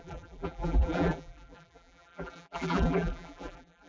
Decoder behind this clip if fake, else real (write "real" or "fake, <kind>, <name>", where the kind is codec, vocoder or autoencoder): fake, vocoder, BigVGAN v2